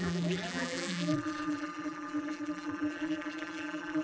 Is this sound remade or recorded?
remade